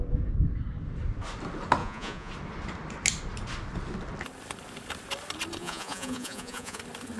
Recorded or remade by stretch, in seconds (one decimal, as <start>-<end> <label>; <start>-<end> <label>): 0.0-1.8 recorded; 1.8-2.3 remade; 2.3-5.6 recorded; 5.6-6.8 remade; 6.8-7.2 recorded